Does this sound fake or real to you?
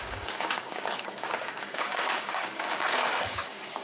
fake